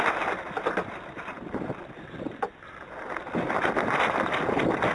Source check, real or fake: real